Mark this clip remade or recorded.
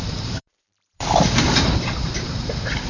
remade